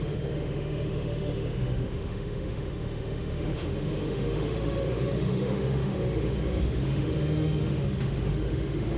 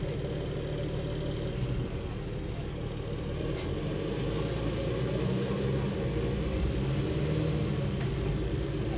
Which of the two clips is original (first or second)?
second